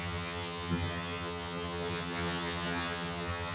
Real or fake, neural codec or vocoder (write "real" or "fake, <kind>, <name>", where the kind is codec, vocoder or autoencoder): fake, vocoder, HiFi-GAN